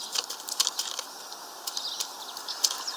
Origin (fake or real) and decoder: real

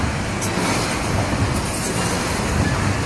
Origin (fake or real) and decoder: real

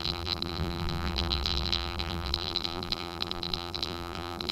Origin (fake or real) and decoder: fake, vocoder, BigVGAN v2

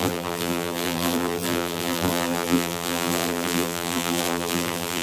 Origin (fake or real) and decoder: fake, vocoder, BigVGAN v2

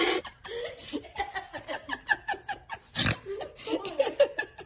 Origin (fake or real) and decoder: real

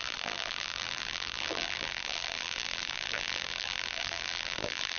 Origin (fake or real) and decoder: fake, vocoder, BigVGAN v2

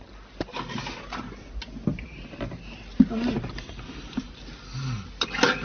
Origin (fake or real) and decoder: real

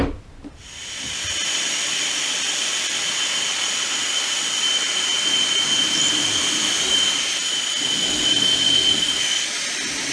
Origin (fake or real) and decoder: real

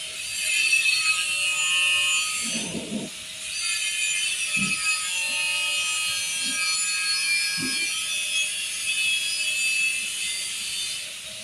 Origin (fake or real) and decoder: real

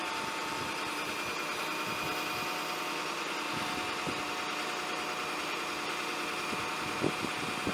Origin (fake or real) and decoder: real